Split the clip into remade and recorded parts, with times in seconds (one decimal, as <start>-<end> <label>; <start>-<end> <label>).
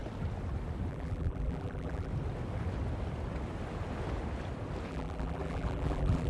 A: 0.0-0.9 recorded; 0.9-2.1 remade; 2.1-4.9 recorded; 4.9-6.3 remade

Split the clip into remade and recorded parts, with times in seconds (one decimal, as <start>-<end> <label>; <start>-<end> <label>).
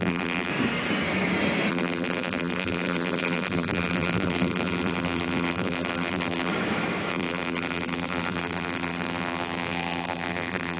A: 0.0-0.5 remade; 0.5-1.7 recorded; 1.7-6.5 remade; 6.5-7.1 recorded; 7.1-10.8 remade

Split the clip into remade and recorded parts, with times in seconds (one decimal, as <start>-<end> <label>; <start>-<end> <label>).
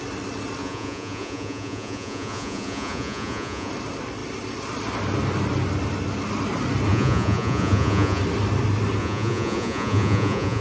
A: 0.0-0.6 recorded; 0.6-3.7 remade; 3.7-6.9 recorded; 6.9-8.2 remade; 8.2-9.0 recorded; 9.0-10.6 remade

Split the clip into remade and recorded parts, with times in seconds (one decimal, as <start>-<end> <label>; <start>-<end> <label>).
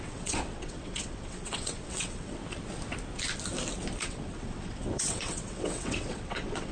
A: 0.0-2.4 remade; 2.4-4.0 recorded; 4.0-6.7 remade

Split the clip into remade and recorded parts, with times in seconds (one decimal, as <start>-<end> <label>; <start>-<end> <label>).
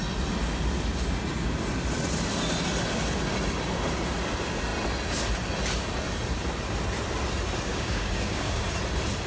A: 0.0-7.7 recorded; 7.7-8.6 remade; 8.6-9.3 recorded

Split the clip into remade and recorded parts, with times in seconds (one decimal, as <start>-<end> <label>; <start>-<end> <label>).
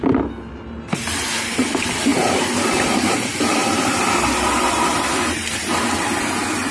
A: 0.0-6.7 recorded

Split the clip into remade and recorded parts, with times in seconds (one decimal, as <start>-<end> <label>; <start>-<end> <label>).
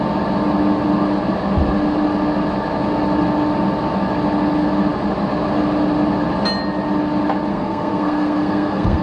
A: 0.0-7.5 recorded; 7.5-9.0 remade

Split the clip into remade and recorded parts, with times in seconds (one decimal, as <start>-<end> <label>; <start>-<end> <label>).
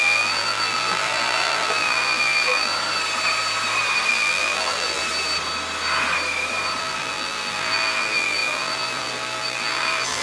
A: 0.0-2.7 remade; 2.7-4.1 recorded; 4.1-5.0 remade; 5.0-6.8 recorded; 6.8-10.2 remade